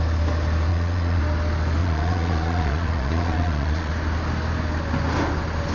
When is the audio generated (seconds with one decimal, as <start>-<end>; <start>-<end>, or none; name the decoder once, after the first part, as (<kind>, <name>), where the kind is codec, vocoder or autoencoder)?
0.7-1.2 (vocoder, Vocos); 1.8-3.9